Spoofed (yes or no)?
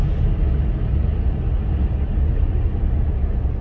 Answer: no